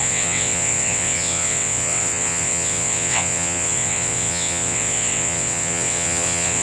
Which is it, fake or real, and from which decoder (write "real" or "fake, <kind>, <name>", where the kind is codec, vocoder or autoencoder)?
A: fake, vocoder, WaveNeXt